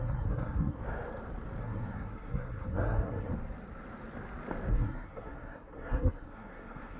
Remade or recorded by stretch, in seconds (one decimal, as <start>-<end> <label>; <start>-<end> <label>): 0.0-0.8 remade; 0.8-1.6 recorded; 1.6-3.3 remade; 3.3-4.7 recorded; 4.7-7.0 remade